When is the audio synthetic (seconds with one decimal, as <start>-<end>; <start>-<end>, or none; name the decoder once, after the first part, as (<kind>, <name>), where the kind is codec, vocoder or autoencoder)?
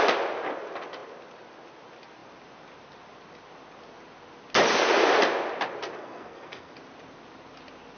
6.0-6.7 (codec, SNAC)